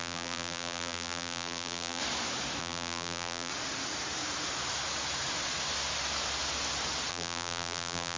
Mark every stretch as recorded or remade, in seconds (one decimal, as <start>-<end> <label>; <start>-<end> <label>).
0.0-2.0 remade; 2.0-2.6 recorded; 2.6-3.5 remade; 3.5-7.1 recorded; 7.1-8.2 remade